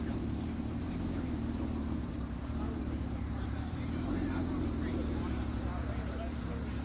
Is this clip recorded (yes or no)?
no